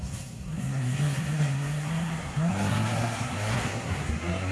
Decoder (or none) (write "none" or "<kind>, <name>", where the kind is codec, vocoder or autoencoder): codec, SNAC